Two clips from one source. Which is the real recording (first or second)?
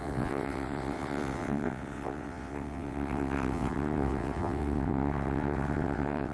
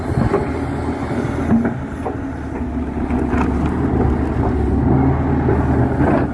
second